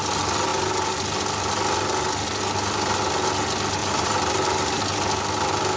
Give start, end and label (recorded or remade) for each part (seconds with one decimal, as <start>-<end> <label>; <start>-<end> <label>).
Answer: 0.0-3.8 recorded; 3.8-4.8 remade; 4.8-5.8 recorded